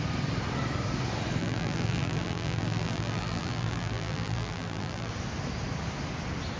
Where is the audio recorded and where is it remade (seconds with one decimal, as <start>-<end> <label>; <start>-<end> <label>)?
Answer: 0.0-1.4 recorded; 1.4-5.1 remade; 5.1-6.6 recorded